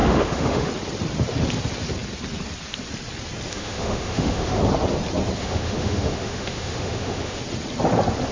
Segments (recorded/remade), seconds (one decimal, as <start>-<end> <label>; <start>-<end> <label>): 0.0-0.7 remade; 0.7-3.5 recorded; 3.5-4.6 remade; 4.6-5.4 recorded; 5.4-7.4 remade; 7.4-8.3 recorded